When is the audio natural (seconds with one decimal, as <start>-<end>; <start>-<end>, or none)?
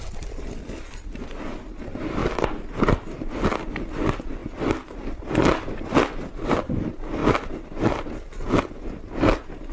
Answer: 0.0-4.4; 6.3-9.7